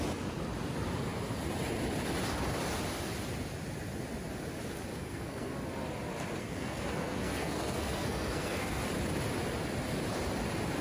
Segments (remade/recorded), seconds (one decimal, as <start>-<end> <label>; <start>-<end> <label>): 0.0-4.9 recorded; 4.9-5.5 remade; 5.5-6.4 recorded; 6.4-8.8 remade; 8.8-10.8 recorded